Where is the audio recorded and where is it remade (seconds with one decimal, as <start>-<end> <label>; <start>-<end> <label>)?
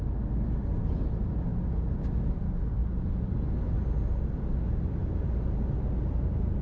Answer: 0.0-6.6 recorded